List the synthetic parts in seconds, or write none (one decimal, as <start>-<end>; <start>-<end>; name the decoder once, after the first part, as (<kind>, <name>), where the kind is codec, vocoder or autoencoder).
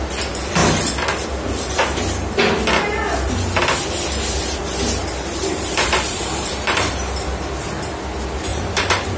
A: 5.4-6.9 (vocoder, BigVGAN v2); 8.5-9.2